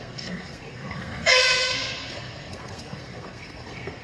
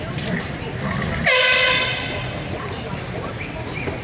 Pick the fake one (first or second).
first